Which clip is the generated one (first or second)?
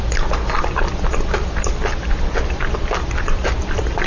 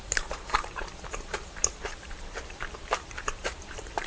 second